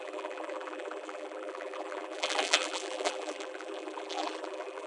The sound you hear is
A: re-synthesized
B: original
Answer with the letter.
A